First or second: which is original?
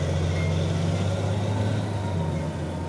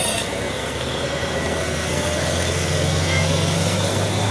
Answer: first